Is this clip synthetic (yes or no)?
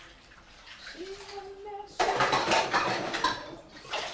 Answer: yes